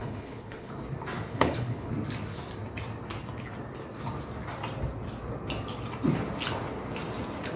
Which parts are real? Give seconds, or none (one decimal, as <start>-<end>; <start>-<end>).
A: 0.7-1.3; 1.9-7.6